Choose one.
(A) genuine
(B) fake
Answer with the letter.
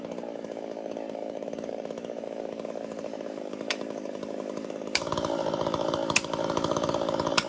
B